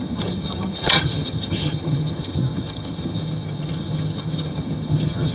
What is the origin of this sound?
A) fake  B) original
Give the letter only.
A